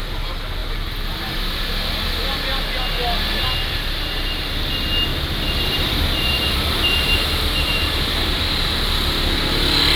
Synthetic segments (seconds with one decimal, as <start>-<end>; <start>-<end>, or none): 5.1-8.4